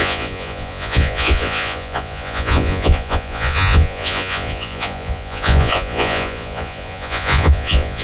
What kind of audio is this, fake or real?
fake